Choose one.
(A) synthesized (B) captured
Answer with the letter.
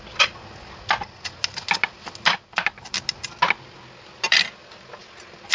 B